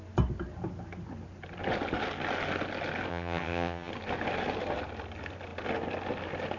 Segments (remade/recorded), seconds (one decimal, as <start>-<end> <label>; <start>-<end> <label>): 0.0-3.1 recorded; 3.1-3.9 remade; 3.9-6.6 recorded